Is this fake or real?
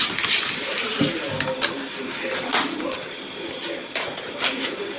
real